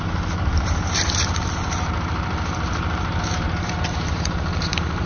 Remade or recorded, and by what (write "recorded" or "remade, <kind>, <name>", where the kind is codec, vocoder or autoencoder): remade, vocoder, BigVGAN v2